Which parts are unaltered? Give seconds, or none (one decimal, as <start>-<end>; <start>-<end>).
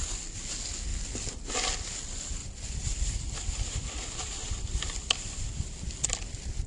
0.0-0.9; 1.5-2.4